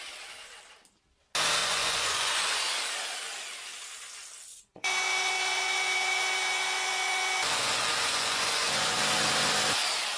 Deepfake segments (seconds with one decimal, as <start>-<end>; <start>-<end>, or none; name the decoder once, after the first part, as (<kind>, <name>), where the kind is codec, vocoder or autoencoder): 1.6-2.8 (vocoder, Vocos); 4.5-9.0